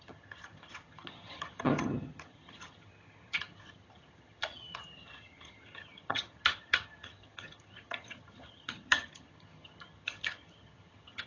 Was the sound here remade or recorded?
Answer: remade